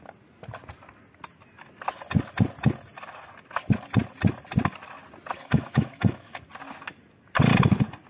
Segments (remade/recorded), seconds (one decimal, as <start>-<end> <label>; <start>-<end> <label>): 0.0-5.4 recorded; 5.4-6.4 remade; 6.4-8.1 recorded